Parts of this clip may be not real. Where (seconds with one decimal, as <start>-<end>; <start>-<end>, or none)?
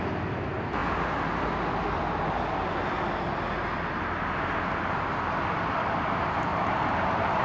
6.5-7.4